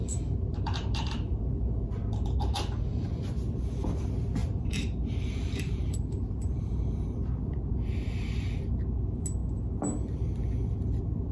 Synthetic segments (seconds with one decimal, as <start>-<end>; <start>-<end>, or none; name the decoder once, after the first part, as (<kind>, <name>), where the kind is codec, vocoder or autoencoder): 0.0-2.6 (vocoder, BigVGAN v2); 4.4-8.8